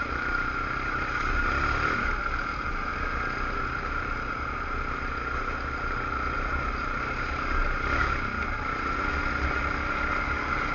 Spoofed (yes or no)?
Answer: no